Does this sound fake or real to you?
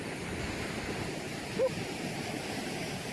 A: real